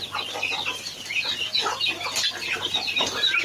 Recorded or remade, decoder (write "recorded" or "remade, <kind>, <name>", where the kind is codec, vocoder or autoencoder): recorded